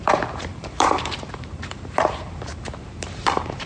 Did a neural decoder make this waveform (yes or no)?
yes